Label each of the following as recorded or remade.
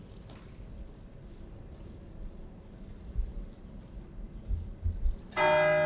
recorded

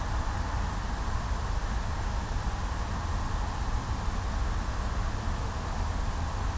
recorded